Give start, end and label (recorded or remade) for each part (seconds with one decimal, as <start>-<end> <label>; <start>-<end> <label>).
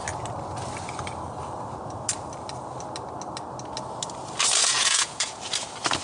0.0-4.6 recorded; 4.6-5.4 remade; 5.4-6.0 recorded